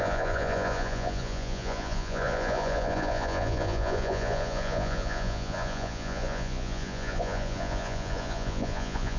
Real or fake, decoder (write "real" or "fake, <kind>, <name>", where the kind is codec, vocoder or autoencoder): fake, vocoder, Vocos